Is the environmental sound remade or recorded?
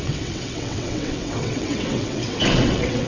remade